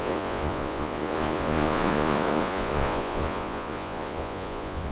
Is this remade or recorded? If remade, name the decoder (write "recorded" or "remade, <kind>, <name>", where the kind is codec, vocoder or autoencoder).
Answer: remade, vocoder, Vocos